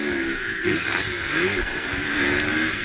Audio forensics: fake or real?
fake